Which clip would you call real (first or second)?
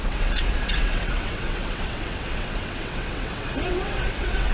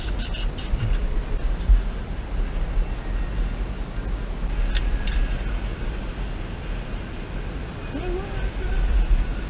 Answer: second